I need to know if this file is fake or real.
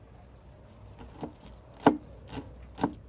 real